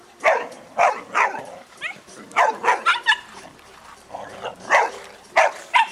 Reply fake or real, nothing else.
fake